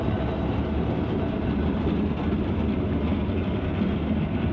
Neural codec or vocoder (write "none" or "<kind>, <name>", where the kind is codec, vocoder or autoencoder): none